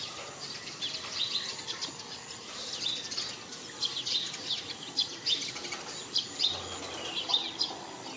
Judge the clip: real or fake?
real